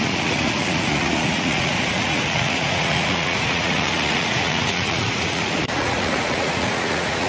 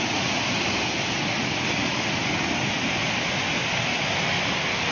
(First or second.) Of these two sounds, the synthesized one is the first